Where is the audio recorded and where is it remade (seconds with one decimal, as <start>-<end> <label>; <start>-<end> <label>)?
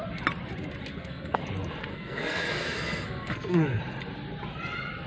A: 0.0-0.9 recorded; 0.9-1.4 remade; 1.4-1.9 recorded; 1.9-3.8 remade; 3.8-5.1 recorded